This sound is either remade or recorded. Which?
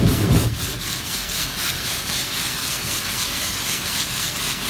remade